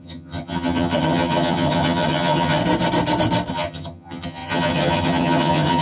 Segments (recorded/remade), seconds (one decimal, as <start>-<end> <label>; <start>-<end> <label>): 0.0-2.6 remade; 2.6-3.5 recorded; 3.5-5.8 remade